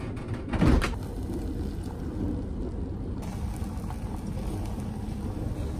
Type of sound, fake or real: real